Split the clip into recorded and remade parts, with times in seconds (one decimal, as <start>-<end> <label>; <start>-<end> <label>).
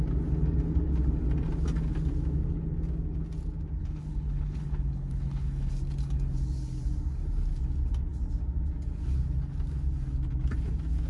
0.0-3.8 recorded; 3.8-5.7 remade; 5.7-11.1 recorded